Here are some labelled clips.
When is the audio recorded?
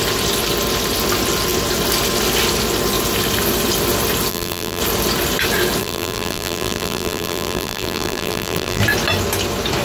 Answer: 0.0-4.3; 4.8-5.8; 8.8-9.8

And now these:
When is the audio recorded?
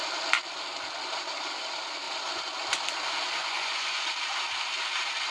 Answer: 0.0-3.4; 4.0-5.3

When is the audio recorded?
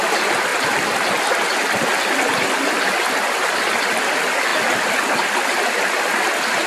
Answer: 0.0-6.7